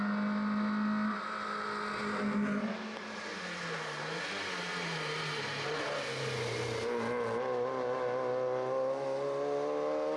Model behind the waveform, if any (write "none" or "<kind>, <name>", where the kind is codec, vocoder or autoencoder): none